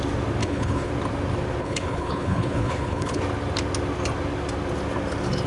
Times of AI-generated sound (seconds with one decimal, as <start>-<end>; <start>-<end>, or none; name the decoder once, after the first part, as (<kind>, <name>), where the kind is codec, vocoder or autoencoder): 0.4-0.9 (codec, HILCodec); 1.6-3.2

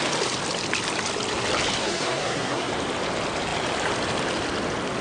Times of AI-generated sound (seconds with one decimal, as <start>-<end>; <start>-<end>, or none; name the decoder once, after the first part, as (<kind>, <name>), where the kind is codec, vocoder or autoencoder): 1.8-2.7 (codec, SNAC)

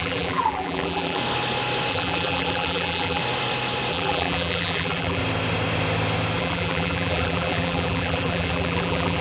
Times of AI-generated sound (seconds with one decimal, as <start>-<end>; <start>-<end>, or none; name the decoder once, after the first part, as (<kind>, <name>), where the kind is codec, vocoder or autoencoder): 0.0-1.2 (vocoder, BigVGAN v2); 1.9-3.2; 3.9-5.2; 6.4-9.2

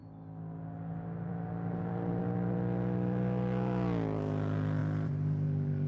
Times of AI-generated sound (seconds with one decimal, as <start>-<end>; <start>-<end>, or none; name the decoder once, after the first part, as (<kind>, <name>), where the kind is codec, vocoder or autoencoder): none

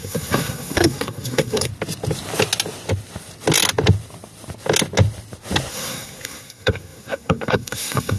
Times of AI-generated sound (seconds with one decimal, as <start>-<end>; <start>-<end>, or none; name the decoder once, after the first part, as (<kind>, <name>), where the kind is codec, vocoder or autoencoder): 0.0-1.7 (codec, SNAC); 5.7-8.2

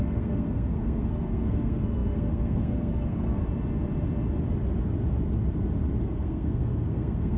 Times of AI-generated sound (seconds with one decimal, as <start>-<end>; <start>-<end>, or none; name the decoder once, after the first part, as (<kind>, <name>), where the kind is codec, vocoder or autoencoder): 0.0-3.4 (codec, SNAC); 6.0-7.4

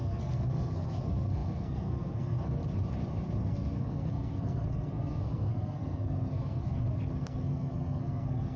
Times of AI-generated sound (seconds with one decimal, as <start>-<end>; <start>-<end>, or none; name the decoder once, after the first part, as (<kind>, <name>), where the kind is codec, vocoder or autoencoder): 0.0-2.6 (codec, SNAC); 3.4-8.6